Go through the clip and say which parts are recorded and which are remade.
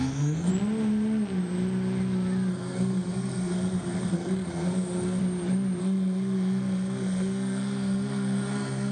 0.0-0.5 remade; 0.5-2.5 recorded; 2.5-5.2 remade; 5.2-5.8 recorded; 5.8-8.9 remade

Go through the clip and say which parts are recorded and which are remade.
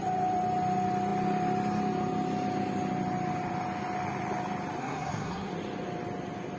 0.0-4.8 recorded; 4.8-5.5 remade; 5.5-6.6 recorded